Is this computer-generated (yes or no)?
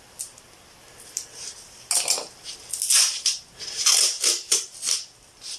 no